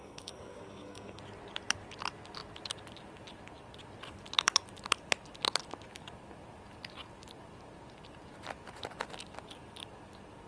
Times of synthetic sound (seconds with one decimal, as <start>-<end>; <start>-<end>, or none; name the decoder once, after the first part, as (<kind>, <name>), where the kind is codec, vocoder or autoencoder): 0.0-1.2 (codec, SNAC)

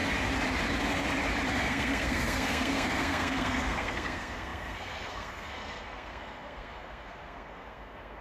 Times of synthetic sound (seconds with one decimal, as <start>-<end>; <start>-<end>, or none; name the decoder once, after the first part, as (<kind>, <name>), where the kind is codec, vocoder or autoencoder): 1.5-8.2 (codec, SNAC)

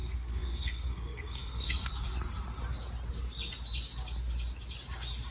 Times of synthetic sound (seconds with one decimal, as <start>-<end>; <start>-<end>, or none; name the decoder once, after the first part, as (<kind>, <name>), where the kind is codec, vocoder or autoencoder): 0.0-1.9 (codec, SNAC)